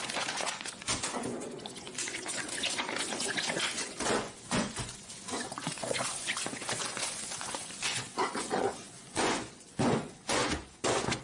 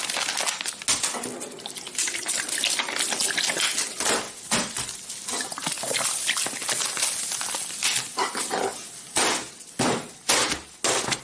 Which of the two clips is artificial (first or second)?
first